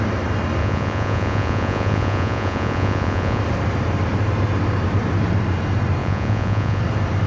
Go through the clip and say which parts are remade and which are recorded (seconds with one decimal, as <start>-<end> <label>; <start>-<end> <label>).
0.0-0.6 recorded; 0.6-3.4 remade; 3.4-6.0 recorded; 6.0-6.8 remade; 6.8-7.3 recorded